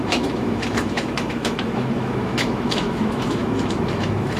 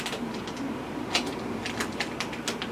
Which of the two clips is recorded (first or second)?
second